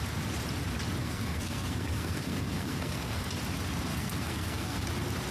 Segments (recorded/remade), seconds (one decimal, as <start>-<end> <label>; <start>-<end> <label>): 0.0-1.0 recorded; 1.0-3.3 remade; 3.3-3.9 recorded; 3.9-4.8 remade; 4.8-5.3 recorded